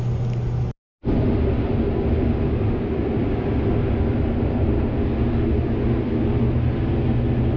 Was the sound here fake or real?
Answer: real